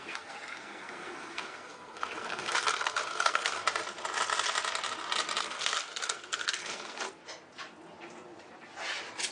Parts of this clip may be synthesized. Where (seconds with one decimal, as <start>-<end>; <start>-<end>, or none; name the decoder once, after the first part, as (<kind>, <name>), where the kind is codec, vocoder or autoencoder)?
0.0-3.6 (codec, SNAC); 5.4-7.2